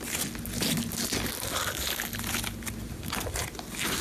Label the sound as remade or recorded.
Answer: recorded